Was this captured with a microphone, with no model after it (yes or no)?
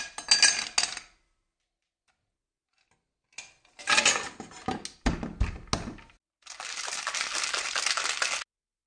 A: yes